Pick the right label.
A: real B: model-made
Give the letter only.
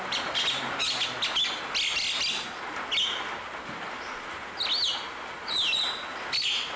A